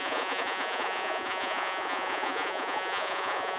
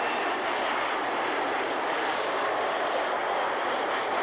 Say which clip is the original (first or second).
second